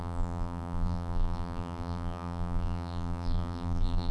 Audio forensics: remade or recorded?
remade